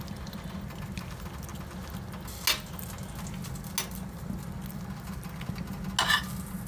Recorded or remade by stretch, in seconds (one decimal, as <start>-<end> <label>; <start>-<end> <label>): 0.0-6.7 recorded

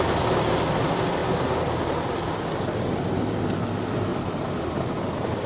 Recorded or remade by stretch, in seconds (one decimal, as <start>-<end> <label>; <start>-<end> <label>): 0.0-1.2 recorded; 1.2-3.4 remade; 3.4-4.1 recorded; 4.1-5.5 remade